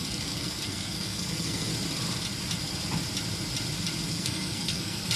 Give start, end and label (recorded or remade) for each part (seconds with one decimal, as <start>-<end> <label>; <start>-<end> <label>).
0.0-1.7 remade; 1.7-4.1 recorded; 4.1-5.2 remade